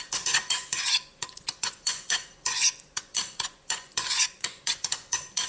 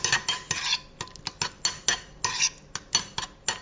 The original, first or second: second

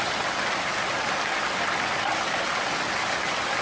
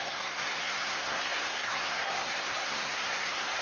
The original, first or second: first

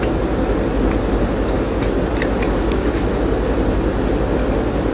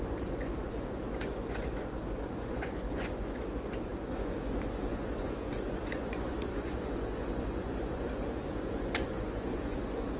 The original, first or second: first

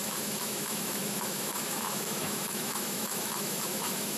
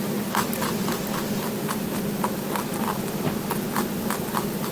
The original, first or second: second